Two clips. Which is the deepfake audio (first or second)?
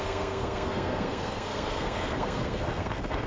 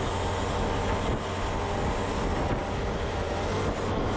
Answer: first